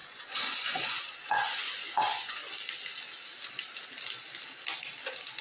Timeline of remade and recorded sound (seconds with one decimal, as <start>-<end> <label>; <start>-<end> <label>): 0.0-2.4 remade; 2.4-5.4 recorded